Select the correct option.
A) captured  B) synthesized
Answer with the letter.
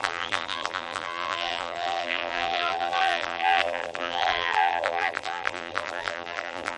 B